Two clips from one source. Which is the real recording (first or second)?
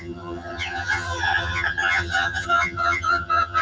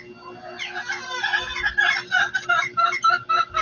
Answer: second